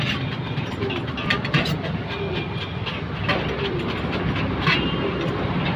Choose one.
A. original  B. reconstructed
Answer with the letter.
A